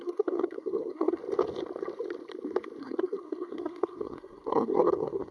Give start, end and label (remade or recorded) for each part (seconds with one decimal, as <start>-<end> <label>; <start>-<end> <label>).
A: 0.0-1.2 remade; 1.2-2.8 recorded; 2.8-5.3 remade